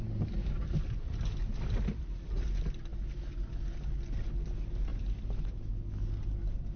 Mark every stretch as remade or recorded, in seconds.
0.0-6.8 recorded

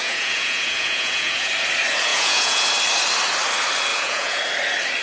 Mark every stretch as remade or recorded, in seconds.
0.0-1.5 remade; 1.5-2.1 recorded; 2.1-2.7 remade; 2.7-3.9 recorded; 3.9-4.4 remade; 4.4-5.0 recorded

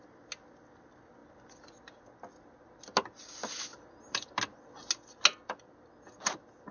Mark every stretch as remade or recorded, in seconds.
0.0-1.2 recorded; 1.2-2.1 remade; 2.1-6.7 recorded